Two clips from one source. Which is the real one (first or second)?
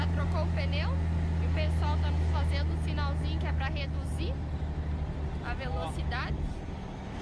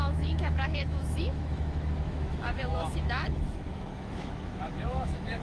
first